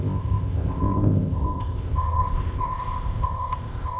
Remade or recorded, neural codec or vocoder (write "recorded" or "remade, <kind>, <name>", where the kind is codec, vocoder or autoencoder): remade, codec, ZipCodec